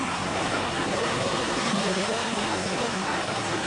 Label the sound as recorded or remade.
remade